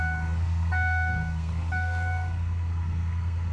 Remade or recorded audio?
remade